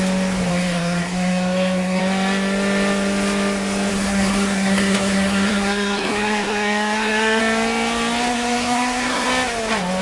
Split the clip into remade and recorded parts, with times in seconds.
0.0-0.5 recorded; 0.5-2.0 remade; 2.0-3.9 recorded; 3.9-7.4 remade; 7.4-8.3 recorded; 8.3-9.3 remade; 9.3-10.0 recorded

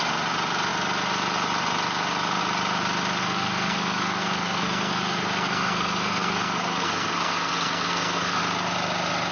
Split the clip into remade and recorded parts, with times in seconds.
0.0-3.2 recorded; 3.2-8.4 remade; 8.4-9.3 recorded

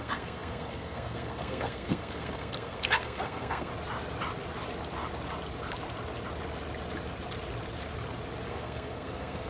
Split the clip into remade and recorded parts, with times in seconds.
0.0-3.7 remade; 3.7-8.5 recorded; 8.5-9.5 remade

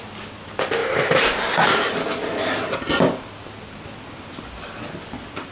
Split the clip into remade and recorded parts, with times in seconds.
0.0-5.5 recorded